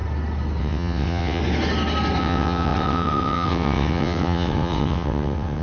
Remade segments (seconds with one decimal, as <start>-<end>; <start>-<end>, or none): 0.6-1.4; 2.2-5.6